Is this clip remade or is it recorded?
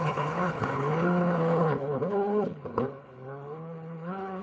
remade